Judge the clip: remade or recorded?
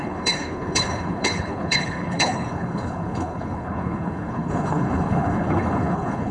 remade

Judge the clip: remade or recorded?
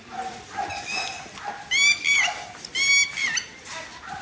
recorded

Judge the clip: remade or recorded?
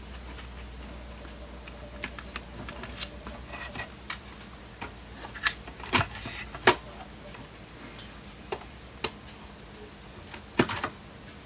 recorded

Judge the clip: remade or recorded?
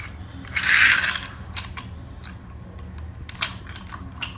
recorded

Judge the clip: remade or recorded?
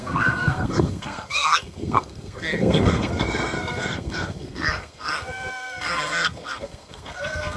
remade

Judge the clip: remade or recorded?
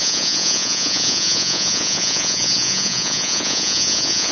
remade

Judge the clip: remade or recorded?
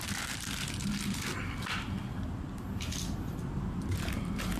recorded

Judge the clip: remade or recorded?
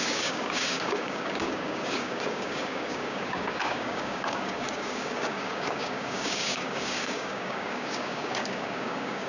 remade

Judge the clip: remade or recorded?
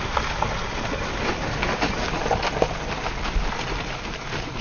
recorded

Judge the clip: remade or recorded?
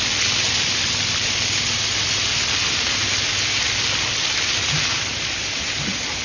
recorded